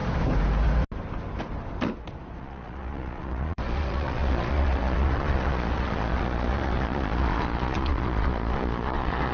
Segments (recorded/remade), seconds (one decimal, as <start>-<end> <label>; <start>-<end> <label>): 0.0-2.4 recorded; 2.4-9.3 remade